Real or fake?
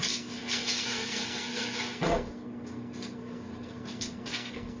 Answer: fake